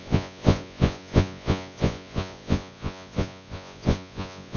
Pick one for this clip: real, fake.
fake